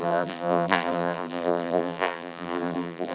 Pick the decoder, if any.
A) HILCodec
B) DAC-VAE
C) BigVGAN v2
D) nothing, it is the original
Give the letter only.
C